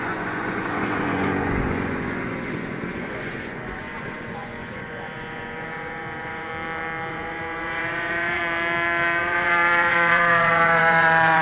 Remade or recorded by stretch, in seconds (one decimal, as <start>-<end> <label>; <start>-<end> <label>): 0.0-6.5 remade; 6.5-7.1 recorded; 7.1-8.4 remade; 8.4-9.2 recorded; 9.2-11.4 remade